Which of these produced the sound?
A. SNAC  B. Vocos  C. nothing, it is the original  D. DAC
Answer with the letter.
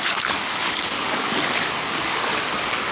D